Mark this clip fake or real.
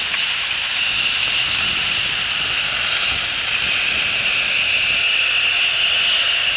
real